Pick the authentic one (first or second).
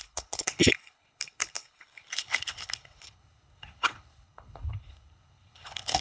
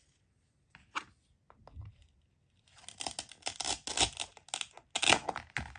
second